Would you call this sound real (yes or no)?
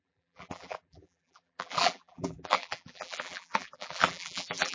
no